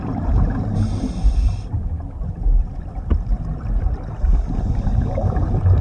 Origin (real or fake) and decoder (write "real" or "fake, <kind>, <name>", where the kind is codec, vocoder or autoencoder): real